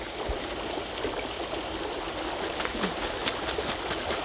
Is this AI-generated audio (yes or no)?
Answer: no